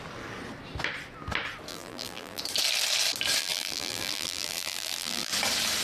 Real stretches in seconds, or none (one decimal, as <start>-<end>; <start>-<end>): 0.0-1.7; 2.4-3.4; 5.3-5.8